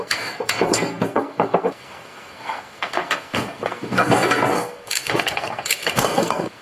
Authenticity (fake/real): fake